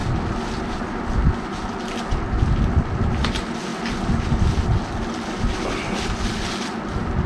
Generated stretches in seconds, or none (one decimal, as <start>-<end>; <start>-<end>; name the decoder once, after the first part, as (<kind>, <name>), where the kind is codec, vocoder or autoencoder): none